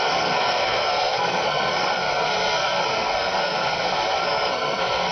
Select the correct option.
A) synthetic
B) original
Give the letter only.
A